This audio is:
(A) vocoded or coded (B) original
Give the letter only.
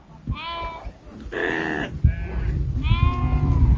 B